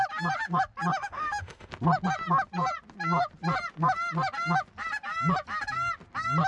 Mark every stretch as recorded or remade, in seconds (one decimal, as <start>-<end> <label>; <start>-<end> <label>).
0.0-0.9 recorded; 0.9-1.7 remade; 1.7-6.5 recorded